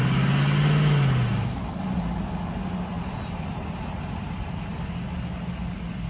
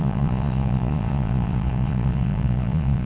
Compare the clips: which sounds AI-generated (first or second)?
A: second